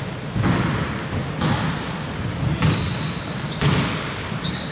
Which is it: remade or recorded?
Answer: recorded